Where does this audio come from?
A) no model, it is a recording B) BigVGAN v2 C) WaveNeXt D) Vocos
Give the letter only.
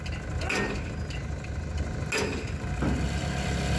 A